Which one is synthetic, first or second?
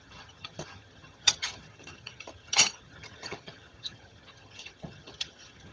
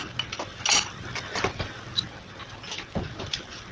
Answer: first